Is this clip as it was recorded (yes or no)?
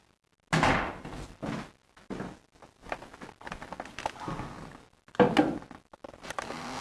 yes